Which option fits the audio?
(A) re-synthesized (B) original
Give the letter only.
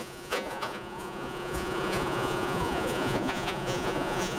A